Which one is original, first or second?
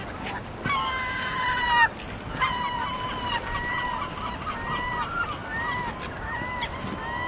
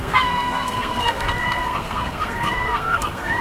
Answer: first